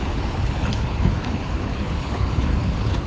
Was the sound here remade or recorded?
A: remade